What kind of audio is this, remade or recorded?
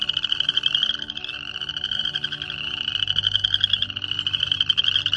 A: recorded